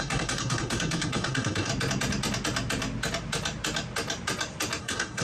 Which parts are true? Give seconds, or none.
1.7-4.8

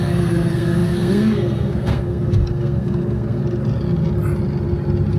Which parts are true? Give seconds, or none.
3.4-5.2